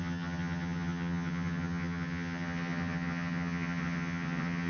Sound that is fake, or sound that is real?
fake